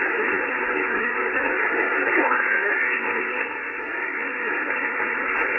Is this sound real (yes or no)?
no